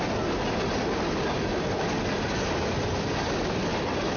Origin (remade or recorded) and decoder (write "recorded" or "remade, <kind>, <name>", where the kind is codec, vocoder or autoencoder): recorded